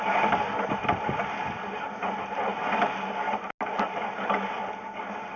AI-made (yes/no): no